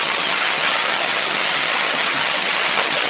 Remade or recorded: remade